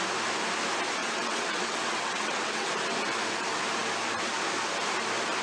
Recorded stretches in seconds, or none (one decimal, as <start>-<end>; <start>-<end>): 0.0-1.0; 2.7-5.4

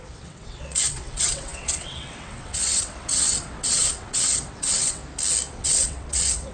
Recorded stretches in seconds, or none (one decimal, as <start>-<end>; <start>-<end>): 5.0-5.5

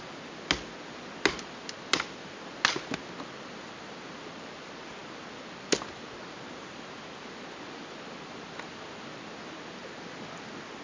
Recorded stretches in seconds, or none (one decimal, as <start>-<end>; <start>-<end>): 0.0-10.8

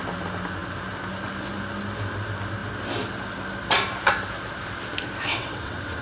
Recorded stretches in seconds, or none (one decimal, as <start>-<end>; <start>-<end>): 0.0-5.3

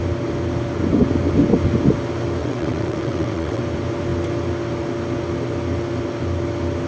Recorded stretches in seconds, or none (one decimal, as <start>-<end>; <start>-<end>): 0.0-2.4; 3.6-6.9

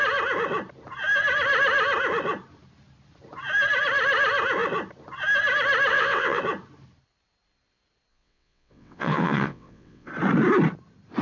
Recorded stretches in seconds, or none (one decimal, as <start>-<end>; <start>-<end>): 0.0-5.9; 6.4-8.1; 10.1-11.2

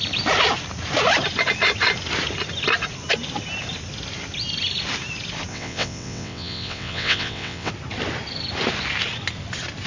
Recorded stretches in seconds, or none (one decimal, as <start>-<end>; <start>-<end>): 0.0-5.5; 7.7-9.9

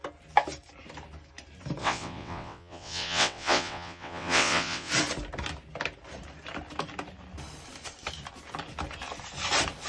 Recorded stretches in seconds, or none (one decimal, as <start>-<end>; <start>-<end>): 0.0-1.8; 4.9-9.9